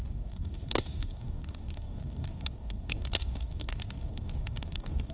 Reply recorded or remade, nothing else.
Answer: remade